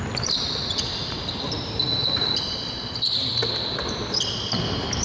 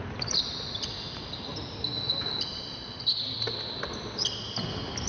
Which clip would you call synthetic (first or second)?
first